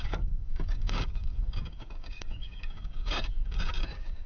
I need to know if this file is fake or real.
fake